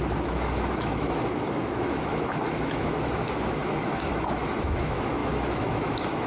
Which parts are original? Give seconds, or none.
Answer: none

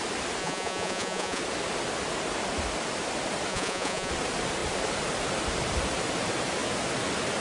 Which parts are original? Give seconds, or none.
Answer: 0.0-0.4; 1.4-3.5; 4.1-7.4

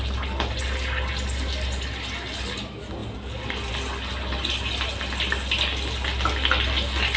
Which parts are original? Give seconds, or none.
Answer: 0.0-7.2

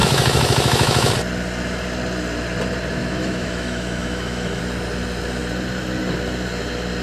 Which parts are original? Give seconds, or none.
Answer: 1.1-3.0; 4.6-7.0

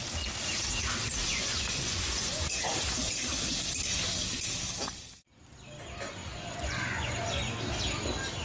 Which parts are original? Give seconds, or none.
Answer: 0.0-1.2; 2.6-6.2; 7.5-8.4

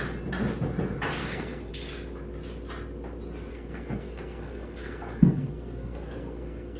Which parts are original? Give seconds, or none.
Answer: 0.0-1.2; 1.7-3.5

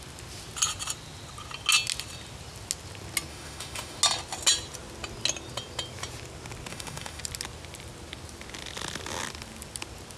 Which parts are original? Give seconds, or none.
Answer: 0.0-3.3; 4.0-6.7; 7.2-10.2